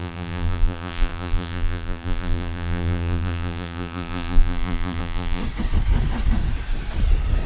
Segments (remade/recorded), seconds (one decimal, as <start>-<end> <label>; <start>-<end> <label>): 0.0-5.4 remade; 5.4-7.5 recorded

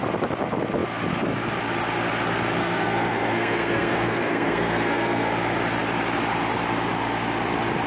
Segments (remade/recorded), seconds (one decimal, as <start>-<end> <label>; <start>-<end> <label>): 0.0-2.6 recorded; 2.6-5.3 remade; 5.3-7.9 recorded

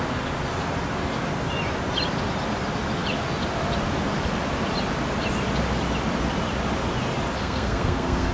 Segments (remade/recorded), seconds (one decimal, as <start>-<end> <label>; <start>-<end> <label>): 0.0-7.4 recorded; 7.4-8.3 remade

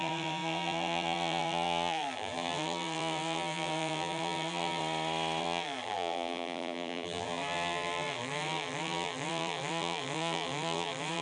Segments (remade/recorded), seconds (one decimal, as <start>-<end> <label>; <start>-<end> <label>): 0.0-4.8 remade; 4.8-5.4 recorded; 5.4-11.2 remade